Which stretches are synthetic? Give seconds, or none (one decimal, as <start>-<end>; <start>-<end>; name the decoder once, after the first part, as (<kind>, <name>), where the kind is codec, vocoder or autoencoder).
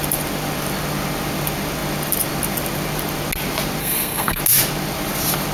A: 3.8-4.4 (codec, SNAC)